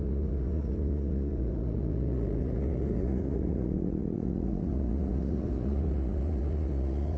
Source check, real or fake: fake